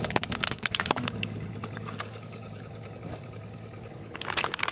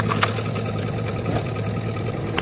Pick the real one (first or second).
second